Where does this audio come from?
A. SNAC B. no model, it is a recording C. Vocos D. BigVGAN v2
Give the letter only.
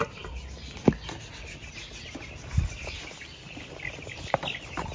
B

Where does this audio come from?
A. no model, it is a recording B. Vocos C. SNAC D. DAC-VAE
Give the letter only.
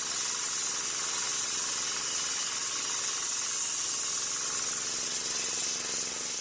A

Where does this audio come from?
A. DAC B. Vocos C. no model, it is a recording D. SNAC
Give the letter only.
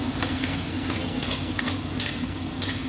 D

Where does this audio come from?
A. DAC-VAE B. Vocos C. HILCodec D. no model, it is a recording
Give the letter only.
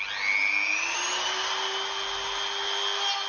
D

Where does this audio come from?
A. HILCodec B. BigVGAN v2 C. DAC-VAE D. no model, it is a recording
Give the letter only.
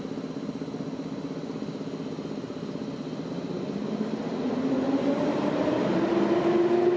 D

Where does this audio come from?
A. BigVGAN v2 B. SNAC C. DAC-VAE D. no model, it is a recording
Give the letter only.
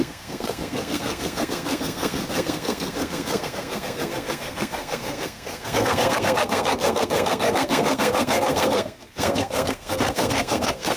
B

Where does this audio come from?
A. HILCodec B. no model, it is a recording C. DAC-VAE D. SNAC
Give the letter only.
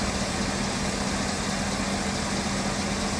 B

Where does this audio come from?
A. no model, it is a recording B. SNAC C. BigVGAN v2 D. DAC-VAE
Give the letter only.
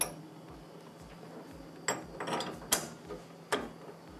A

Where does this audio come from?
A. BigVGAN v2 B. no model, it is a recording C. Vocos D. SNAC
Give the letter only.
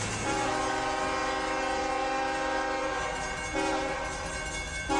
B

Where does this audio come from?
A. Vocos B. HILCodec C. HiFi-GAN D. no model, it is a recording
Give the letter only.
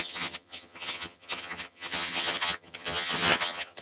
C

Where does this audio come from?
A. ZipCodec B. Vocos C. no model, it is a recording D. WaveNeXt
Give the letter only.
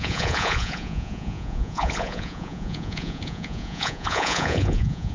B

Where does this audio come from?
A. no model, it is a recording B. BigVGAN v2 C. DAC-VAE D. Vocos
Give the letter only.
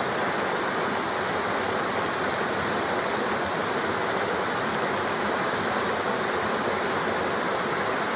A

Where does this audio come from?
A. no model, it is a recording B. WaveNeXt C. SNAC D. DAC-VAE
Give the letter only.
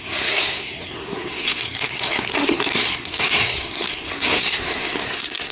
C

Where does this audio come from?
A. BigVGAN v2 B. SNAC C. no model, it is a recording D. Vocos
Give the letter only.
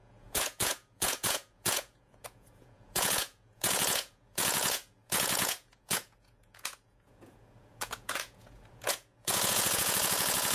D